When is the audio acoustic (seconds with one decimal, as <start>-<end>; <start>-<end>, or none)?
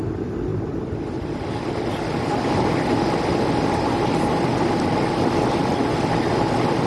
0.0-6.9